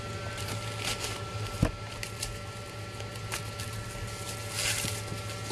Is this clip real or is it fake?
real